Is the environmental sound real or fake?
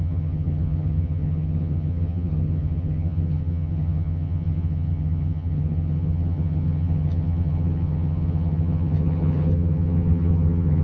fake